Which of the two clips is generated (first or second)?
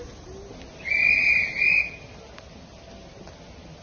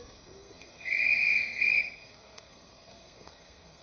second